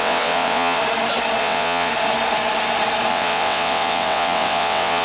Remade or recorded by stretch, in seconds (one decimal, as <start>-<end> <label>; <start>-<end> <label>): 0.0-0.8 remade; 0.8-1.4 recorded; 1.4-1.9 remade; 1.9-3.1 recorded; 3.1-5.0 remade